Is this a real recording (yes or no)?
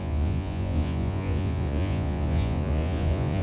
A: no